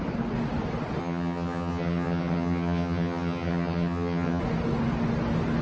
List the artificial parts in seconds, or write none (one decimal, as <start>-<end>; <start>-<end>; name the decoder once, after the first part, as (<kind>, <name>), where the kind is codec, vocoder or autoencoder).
1.0-4.4 (vocoder, HiFi-GAN)